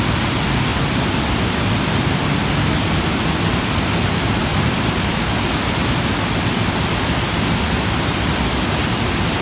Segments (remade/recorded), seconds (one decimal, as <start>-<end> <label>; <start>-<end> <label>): 0.0-9.4 recorded